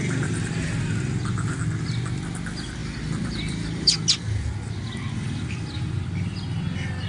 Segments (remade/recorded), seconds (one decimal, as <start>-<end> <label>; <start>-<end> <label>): 0.0-0.5 remade; 0.5-2.8 recorded; 2.8-4.0 remade; 4.0-7.1 recorded